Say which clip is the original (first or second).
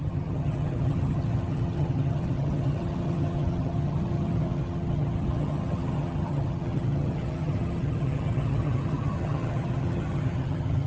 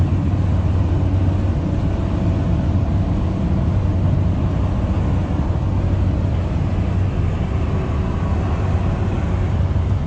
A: second